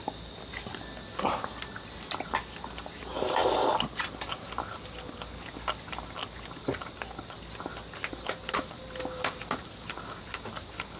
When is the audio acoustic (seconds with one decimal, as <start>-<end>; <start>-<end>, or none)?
0.0-11.0

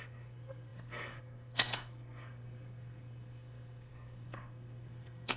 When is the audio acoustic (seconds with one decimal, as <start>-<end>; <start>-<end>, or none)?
none

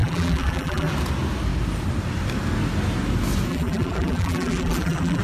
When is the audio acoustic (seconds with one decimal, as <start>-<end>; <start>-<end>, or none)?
0.9-3.5

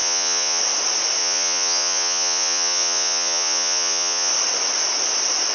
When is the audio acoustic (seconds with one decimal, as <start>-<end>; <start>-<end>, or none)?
0.6-1.2; 4.3-5.5